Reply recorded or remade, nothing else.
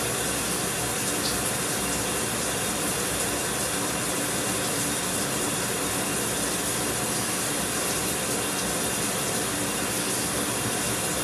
remade